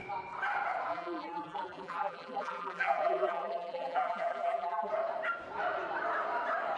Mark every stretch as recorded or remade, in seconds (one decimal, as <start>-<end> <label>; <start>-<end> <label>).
0.0-0.9 recorded; 0.9-4.9 remade; 4.9-6.8 recorded